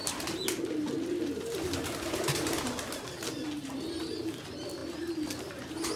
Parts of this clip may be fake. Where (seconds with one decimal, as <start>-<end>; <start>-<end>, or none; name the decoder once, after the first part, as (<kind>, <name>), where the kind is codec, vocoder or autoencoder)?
none